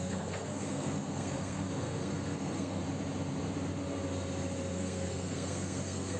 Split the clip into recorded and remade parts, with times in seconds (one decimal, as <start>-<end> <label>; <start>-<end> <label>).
0.0-2.8 remade; 2.8-4.7 recorded; 4.7-6.2 remade